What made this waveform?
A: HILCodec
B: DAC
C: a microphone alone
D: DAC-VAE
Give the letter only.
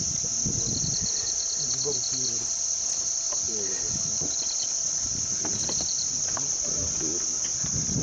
C